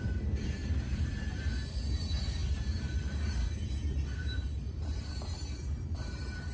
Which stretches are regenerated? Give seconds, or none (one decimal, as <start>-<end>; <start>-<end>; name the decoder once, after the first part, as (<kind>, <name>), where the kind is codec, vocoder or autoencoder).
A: 0.0-1.5 (vocoder, BigVGAN v2); 2.0-6.5